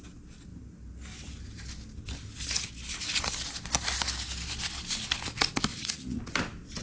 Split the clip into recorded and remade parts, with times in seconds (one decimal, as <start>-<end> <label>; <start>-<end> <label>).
0.0-5.7 recorded; 5.7-6.2 remade; 6.2-6.8 recorded